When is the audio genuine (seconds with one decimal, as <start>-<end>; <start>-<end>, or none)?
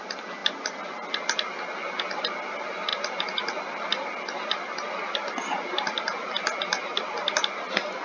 0.0-8.0